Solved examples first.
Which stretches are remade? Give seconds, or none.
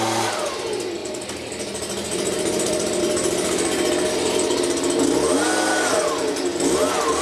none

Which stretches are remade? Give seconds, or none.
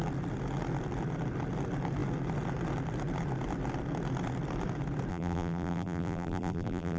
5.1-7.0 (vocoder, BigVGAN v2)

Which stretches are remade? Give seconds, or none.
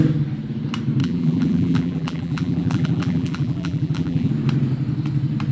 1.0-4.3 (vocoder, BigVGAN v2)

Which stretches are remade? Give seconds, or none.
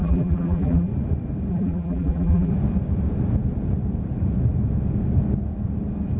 0.0-0.9 (vocoder, BigVGAN v2); 1.5-2.5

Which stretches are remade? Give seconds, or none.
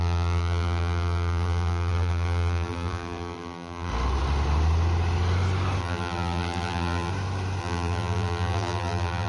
0.0-3.9 (vocoder, BigVGAN v2); 5.8-7.1; 7.6-9.3